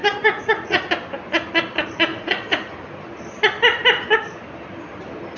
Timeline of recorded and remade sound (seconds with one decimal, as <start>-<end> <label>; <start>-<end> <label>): 0.0-0.9 remade; 0.9-2.1 recorded; 2.1-2.8 remade; 2.8-5.4 recorded